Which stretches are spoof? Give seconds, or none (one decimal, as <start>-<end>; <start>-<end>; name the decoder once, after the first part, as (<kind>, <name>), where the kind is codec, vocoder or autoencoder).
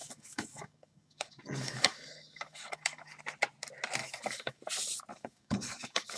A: 0.0-3.2 (codec, DAC); 4.0-4.6; 5.1-6.2